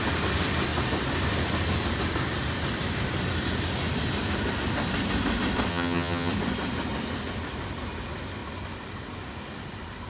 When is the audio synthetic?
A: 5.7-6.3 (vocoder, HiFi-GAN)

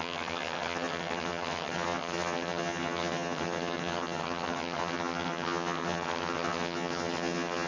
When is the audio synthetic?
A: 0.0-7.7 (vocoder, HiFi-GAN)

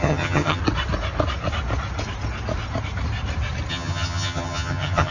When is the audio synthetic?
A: 0.0-0.6 (vocoder, HiFi-GAN); 3.7-5.1

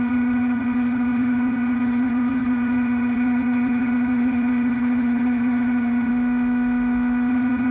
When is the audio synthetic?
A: 0.0-6.1 (vocoder, HiFi-GAN); 7.3-7.7

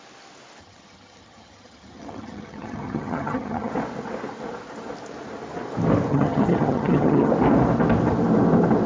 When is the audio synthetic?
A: 0.6-3.7 (vocoder, HiFi-GAN); 6.1-7.3

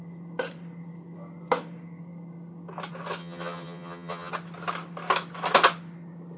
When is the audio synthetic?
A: 3.2-4.3 (vocoder, HiFi-GAN)

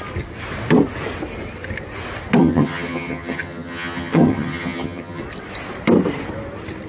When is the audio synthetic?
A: 2.4-5.2 (vocoder, HiFi-GAN)